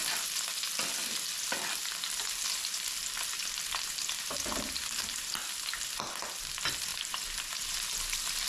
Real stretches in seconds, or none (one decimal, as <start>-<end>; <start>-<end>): 0.0-6.9; 7.4-8.5